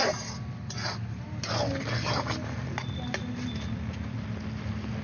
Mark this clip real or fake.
real